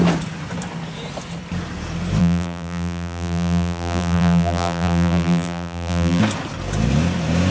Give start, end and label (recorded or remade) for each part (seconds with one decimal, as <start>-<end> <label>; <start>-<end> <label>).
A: 0.0-2.2 recorded; 2.2-6.2 remade; 6.2-7.5 recorded